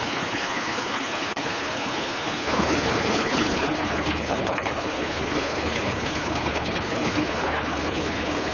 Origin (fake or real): fake